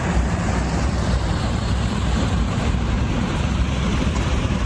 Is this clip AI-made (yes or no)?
yes